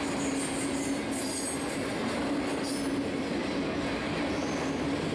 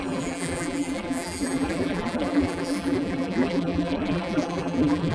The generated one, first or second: second